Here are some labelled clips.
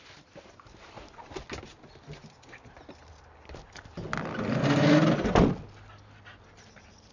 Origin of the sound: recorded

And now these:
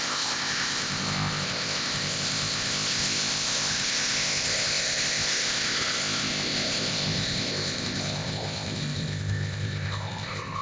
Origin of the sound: remade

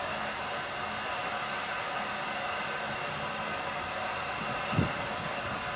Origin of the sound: recorded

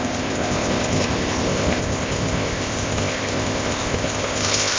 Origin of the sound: remade